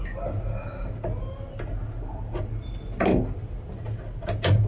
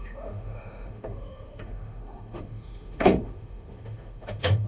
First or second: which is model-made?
second